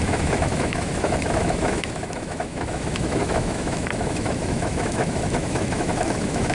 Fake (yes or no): yes